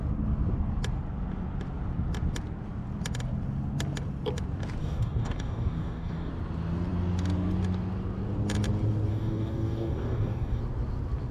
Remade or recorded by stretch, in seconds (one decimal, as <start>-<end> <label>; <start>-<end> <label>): 0.0-4.8 recorded; 4.8-6.3 remade; 6.3-9.1 recorded; 9.1-10.6 remade; 10.6-11.3 recorded